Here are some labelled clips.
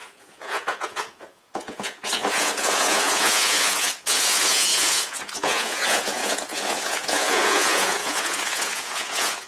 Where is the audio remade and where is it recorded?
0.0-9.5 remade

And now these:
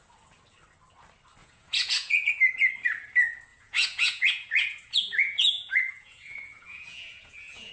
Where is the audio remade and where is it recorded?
0.0-1.4 recorded; 1.4-2.3 remade; 2.3-3.5 recorded; 3.5-7.7 remade

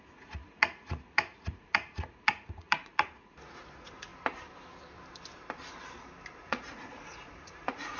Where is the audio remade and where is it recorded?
0.0-4.1 remade; 4.1-6.4 recorded; 6.4-8.0 remade

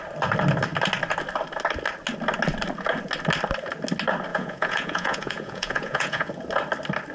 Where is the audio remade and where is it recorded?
0.0-4.3 recorded; 4.3-6.3 remade; 6.3-7.1 recorded

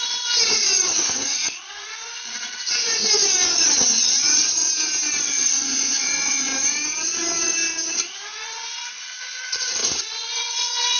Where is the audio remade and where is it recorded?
0.0-4.7 remade; 4.7-5.2 recorded; 5.2-6.5 remade; 6.5-8.0 recorded; 8.0-11.0 remade

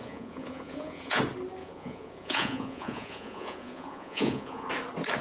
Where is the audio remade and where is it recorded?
0.0-1.2 remade; 1.2-1.6 recorded; 1.6-4.7 remade; 4.7-5.2 recorded

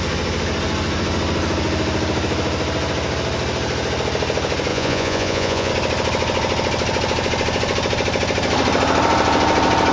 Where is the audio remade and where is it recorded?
0.0-4.7 recorded; 4.7-5.7 remade; 5.7-9.9 recorded